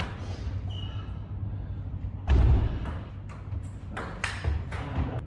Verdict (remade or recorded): recorded